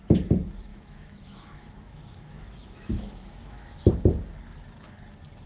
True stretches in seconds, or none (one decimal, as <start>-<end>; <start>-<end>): 0.0-0.7; 3.9-5.5